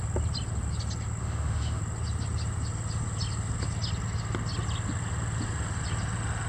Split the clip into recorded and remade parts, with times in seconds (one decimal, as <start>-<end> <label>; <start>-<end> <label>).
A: 0.0-1.2 recorded; 1.2-1.8 remade; 1.8-6.5 recorded